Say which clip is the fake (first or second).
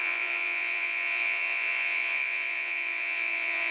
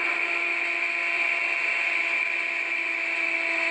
first